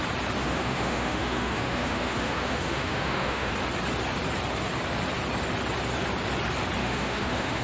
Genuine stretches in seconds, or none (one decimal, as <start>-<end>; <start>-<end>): 0.0-0.4; 3.5-6.8